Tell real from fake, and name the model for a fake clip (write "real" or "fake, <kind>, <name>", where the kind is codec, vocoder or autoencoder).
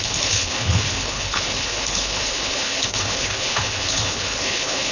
fake, codec, HILCodec